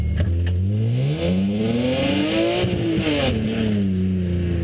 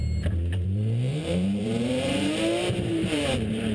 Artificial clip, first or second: second